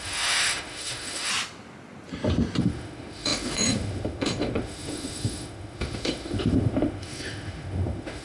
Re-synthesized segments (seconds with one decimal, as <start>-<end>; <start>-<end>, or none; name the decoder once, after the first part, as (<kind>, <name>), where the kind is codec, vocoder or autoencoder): 0.0-1.3 (autoencoder, DAC-VAE); 2.6-8.2